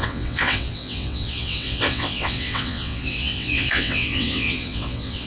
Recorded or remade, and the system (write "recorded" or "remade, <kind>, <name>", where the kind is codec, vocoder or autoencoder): remade, vocoder, WaveNeXt